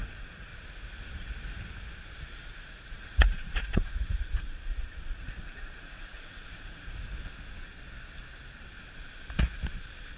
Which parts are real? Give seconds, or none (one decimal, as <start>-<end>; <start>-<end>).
0.5-2.7; 7.1-10.2